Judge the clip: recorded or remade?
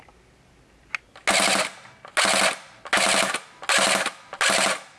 recorded